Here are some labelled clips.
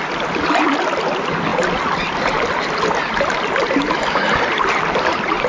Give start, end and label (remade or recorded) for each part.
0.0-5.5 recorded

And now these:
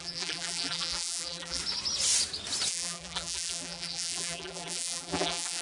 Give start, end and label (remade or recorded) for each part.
0.0-1.6 remade; 1.6-2.7 recorded; 2.7-5.6 remade

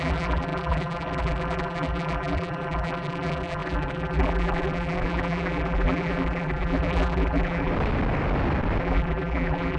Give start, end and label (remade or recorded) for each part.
0.0-7.7 remade; 7.7-8.8 recorded; 8.8-9.8 remade

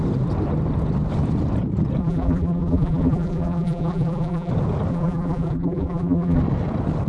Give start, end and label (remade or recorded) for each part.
0.0-2.0 recorded; 2.0-4.5 remade; 4.5-4.9 recorded; 4.9-6.4 remade; 6.4-7.1 recorded

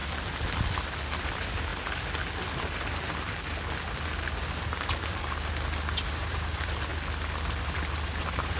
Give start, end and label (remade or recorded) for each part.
0.0-1.2 recorded; 1.2-1.7 remade; 1.7-6.1 recorded; 6.1-6.9 remade; 6.9-8.2 recorded; 8.2-8.6 remade

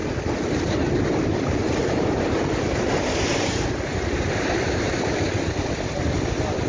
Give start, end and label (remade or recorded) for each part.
0.0-1.1 recorded; 1.1-5.1 remade; 5.1-6.7 recorded